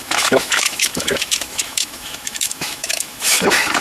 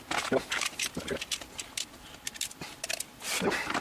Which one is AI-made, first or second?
first